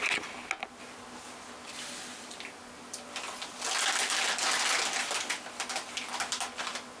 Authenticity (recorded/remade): recorded